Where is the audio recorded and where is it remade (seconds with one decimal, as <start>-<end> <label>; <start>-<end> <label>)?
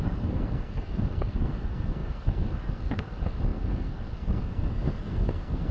0.0-5.7 remade